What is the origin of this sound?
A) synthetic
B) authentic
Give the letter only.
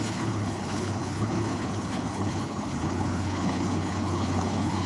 A